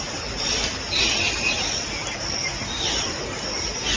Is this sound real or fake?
real